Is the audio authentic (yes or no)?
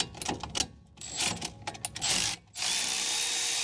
yes